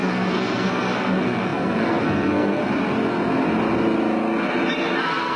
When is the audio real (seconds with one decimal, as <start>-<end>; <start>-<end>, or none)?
2.6-5.0